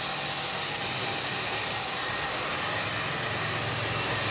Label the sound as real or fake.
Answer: real